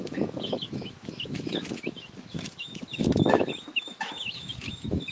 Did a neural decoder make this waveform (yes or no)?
yes